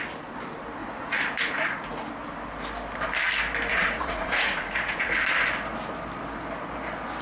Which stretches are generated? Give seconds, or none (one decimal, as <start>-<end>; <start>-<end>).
0.8-2.1; 3.7-5.1